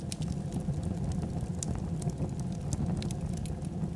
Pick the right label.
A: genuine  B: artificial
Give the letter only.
A